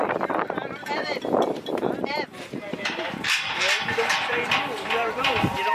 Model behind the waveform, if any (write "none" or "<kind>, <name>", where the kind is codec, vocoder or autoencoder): vocoder, BigVGAN v2